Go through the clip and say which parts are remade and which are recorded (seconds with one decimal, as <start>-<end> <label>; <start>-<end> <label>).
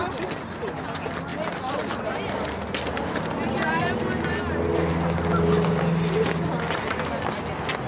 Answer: 0.0-7.9 recorded